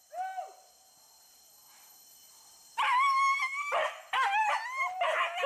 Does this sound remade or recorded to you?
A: recorded